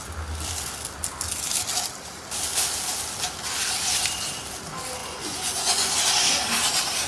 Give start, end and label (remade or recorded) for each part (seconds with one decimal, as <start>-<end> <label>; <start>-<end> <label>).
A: 0.0-5.0 recorded; 5.0-5.9 remade; 5.9-7.1 recorded